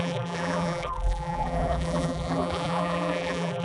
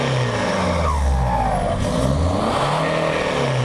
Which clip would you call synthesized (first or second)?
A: first